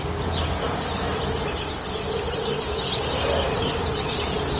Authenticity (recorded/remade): recorded